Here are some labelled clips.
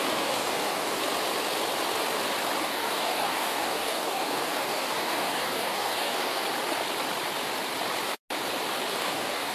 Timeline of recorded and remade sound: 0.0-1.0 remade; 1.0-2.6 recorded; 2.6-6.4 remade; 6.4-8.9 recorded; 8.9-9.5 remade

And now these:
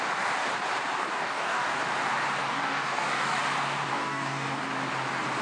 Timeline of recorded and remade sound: 0.0-1.1 recorded; 1.1-1.8 remade; 1.8-2.4 recorded; 2.4-3.4 remade; 3.4-3.9 recorded; 3.9-4.6 remade; 4.6-5.4 recorded

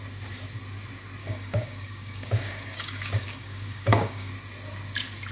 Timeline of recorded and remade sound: 0.0-1.2 recorded; 1.2-4.3 remade; 4.3-5.3 recorded

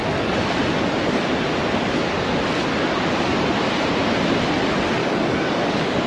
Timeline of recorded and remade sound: 0.0-5.0 recorded; 5.0-6.1 remade

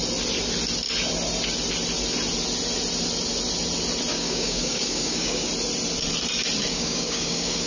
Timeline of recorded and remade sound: 0.0-4.1 recorded; 4.1-5.5 remade; 5.5-6.7 recorded; 6.7-7.7 remade

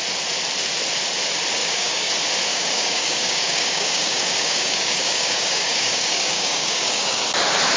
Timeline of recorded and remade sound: 0.0-1.6 recorded; 1.6-2.1 remade; 2.1-2.5 recorded; 2.5-7.2 remade; 7.2-7.8 recorded

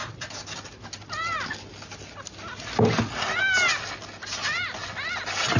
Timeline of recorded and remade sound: 0.0-5.6 recorded

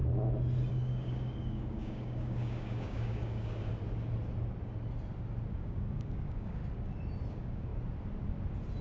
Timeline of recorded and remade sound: 0.0-0.7 recorded; 0.7-3.7 remade; 3.7-5.5 recorded; 5.5-6.6 remade; 6.6-7.3 recorded; 7.3-7.7 remade; 7.7-8.8 recorded